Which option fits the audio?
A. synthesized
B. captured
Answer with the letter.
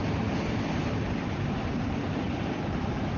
B